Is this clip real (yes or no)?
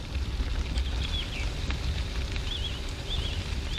yes